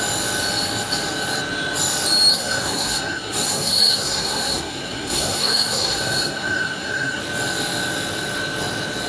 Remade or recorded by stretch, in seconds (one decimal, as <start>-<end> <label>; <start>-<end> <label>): 0.0-2.3 recorded; 2.3-7.2 remade; 7.2-9.1 recorded

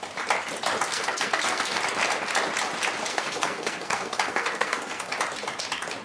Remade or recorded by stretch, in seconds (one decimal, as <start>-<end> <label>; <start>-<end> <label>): 0.0-0.9 recorded; 0.9-1.8 remade; 1.8-3.1 recorded; 3.1-5.1 remade; 5.1-6.0 recorded

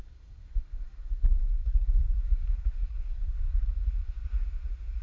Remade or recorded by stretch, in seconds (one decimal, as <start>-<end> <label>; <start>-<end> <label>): 0.0-1.4 recorded; 1.4-3.7 remade; 3.7-5.0 recorded

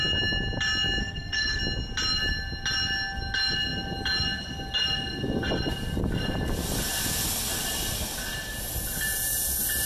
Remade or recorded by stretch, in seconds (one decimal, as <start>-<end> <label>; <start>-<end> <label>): 0.0-1.0 recorded; 1.0-1.6 remade; 1.6-9.8 recorded